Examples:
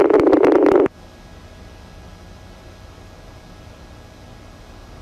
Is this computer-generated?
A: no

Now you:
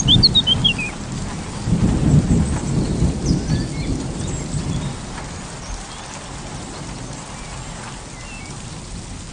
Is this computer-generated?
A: no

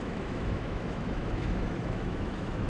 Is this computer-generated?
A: yes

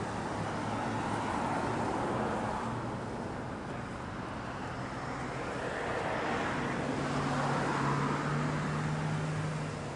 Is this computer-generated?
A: no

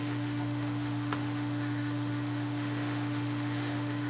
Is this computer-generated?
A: yes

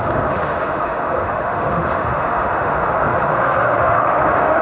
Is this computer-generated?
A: yes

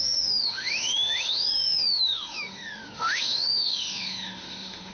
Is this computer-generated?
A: yes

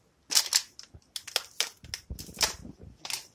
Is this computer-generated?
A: no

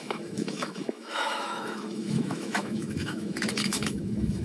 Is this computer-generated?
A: yes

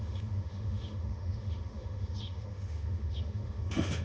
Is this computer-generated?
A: yes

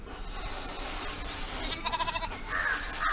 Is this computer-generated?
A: no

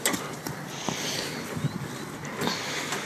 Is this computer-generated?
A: no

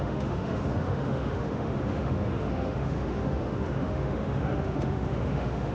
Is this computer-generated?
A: yes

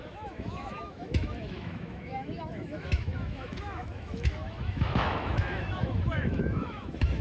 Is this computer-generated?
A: yes